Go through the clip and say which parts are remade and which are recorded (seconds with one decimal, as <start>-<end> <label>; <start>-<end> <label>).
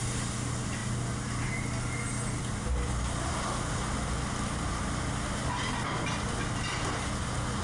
0.0-7.6 recorded